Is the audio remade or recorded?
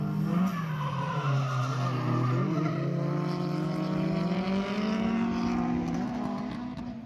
recorded